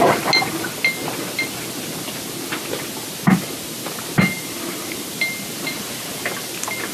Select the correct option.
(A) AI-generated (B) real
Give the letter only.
B